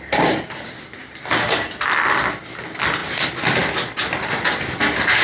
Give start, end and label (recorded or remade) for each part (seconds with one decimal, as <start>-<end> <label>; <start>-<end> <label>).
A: 0.0-5.2 recorded